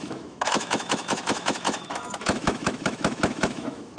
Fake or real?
fake